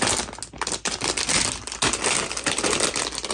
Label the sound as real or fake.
real